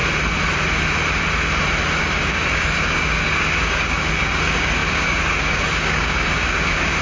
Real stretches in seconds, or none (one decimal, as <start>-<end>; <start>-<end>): 0.0-2.0